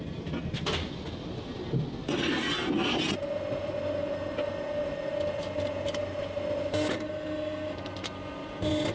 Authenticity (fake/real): real